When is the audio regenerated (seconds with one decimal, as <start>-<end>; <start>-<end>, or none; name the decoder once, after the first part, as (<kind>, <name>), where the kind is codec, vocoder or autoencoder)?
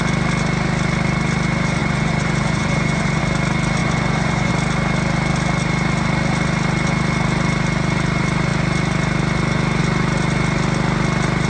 1.8-3.2 (vocoder, Vocos); 3.8-4.5